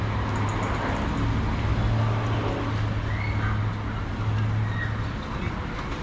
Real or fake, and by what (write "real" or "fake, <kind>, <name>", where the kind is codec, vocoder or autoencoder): real